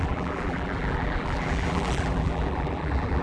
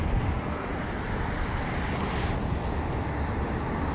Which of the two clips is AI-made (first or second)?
first